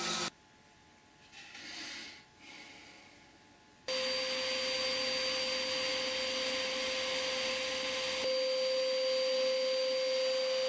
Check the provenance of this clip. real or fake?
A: real